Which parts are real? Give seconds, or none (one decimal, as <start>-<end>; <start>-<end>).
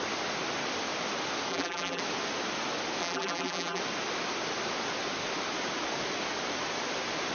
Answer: 0.0-1.5; 2.0-3.0; 3.8-7.3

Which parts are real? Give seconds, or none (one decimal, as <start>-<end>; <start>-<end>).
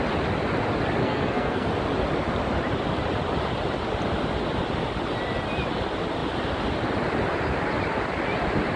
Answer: 0.0-1.0; 1.7-8.8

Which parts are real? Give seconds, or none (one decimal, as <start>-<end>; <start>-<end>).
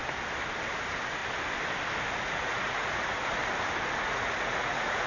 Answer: 0.0-0.7; 1.2-2.2; 3.4-4.0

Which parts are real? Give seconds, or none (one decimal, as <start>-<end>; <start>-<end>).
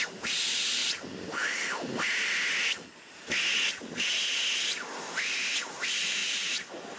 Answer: 0.0-7.0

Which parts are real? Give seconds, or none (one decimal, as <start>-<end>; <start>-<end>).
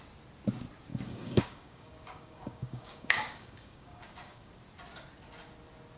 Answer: 0.0-0.9; 4.5-6.0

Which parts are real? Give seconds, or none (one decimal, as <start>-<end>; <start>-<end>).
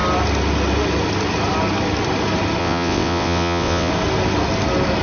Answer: 0.0-2.6; 3.9-5.0